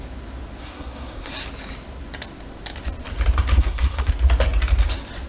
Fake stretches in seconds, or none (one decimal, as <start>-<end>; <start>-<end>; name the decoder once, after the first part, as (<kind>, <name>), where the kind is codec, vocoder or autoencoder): 0.6-1.3 (codec, SNAC); 3.5-4.1